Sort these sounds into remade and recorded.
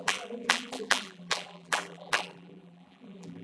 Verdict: remade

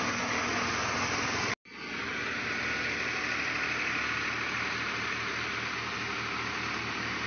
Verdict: recorded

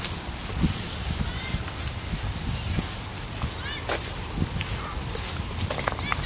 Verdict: recorded